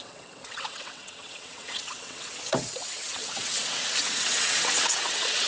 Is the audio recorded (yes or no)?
no